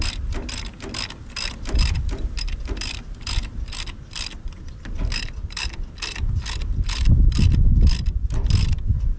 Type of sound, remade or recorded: recorded